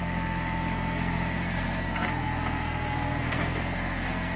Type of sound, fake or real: fake